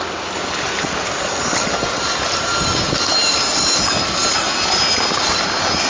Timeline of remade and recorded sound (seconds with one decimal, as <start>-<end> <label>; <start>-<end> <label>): 0.0-5.9 recorded